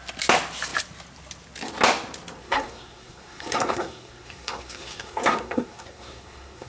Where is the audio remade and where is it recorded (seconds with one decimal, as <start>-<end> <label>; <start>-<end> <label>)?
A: 0.0-2.4 recorded; 2.4-6.7 remade